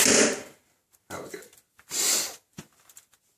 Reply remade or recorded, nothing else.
recorded